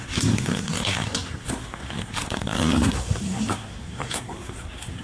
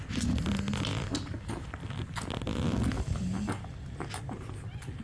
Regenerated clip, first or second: first